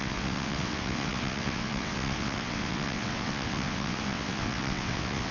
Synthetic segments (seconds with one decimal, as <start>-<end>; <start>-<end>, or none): 0.0-5.3